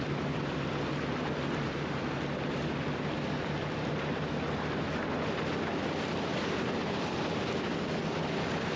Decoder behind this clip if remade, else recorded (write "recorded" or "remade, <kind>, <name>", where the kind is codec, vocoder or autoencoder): recorded